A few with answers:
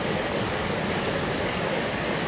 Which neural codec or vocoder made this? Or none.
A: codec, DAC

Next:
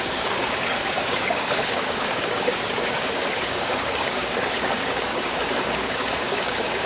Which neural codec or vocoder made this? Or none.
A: codec, DAC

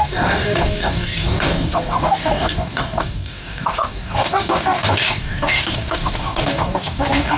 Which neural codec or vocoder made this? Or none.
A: codec, DAC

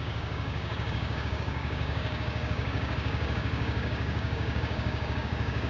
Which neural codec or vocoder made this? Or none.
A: codec, DAC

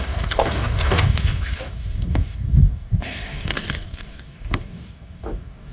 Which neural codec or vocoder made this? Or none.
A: codec, DAC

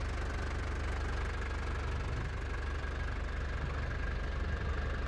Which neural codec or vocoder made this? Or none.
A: none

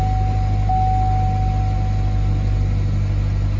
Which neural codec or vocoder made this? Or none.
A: none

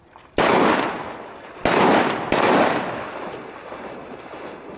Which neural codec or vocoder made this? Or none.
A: none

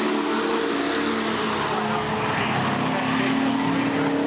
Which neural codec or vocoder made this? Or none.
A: none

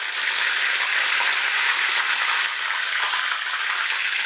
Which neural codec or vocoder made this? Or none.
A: none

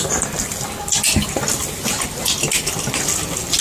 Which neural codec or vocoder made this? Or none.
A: none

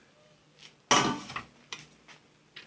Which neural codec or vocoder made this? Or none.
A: none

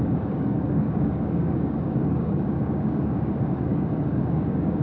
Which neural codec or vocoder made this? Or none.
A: codec, DAC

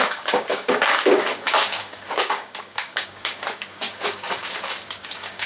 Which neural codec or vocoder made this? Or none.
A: codec, DAC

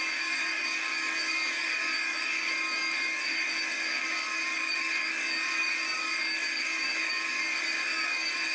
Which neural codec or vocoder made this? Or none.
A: codec, DAC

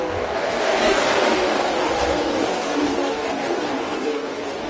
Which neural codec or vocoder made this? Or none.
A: codec, DAC